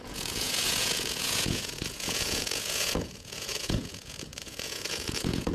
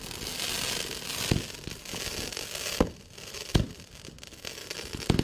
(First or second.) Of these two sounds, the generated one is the first